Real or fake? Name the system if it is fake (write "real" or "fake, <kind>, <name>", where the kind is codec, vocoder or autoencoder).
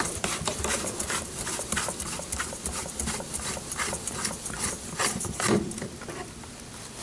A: fake, vocoder, BigVGAN v2